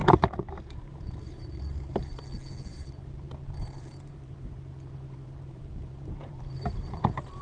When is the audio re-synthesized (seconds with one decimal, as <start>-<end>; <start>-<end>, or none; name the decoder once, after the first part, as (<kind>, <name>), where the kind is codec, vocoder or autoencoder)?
0.0-2.2 (vocoder, BigVGAN v2); 2.7-7.4